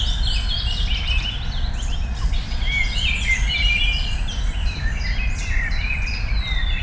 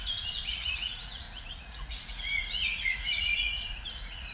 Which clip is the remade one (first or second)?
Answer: second